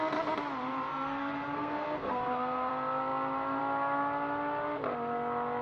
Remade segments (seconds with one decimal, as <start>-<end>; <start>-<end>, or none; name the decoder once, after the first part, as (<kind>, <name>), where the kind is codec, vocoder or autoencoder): 0.9-2.7 (codec, SNAC)